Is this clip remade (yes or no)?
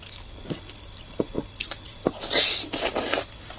no